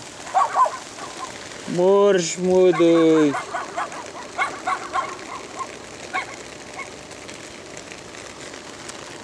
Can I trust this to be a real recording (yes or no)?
yes